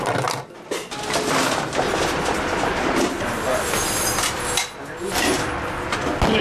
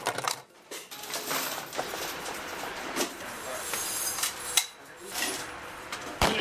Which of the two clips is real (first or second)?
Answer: first